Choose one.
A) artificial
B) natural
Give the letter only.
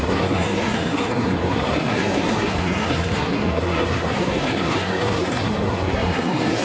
A